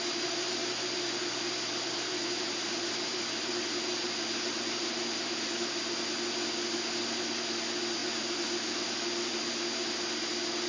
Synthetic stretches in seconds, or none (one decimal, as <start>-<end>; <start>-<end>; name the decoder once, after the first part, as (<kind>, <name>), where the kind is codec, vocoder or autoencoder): 0.6-5.6 (vocoder, BigVGAN v2); 8.0-9.5